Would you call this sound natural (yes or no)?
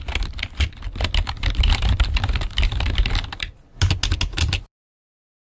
yes